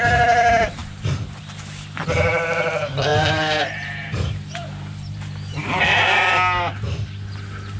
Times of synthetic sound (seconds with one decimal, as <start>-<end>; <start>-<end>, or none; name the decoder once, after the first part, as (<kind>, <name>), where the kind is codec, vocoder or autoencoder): 0.8-1.4 (vocoder, BigVGAN v2); 3.1-5.8